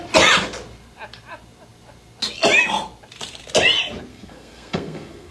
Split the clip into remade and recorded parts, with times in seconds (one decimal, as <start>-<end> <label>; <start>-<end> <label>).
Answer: 0.0-4.1 recorded; 4.1-5.3 remade